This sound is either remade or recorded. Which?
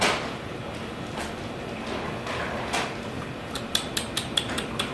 recorded